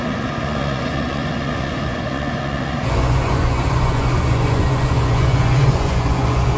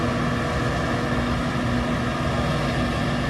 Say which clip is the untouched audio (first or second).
second